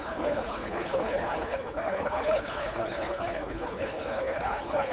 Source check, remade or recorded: remade